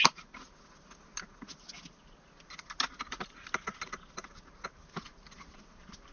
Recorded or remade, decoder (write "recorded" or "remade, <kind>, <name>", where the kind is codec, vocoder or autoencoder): recorded